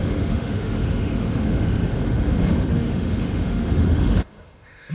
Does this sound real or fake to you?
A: fake